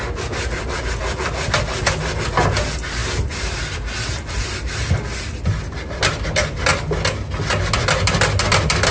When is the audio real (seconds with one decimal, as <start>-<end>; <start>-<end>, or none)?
0.0-8.9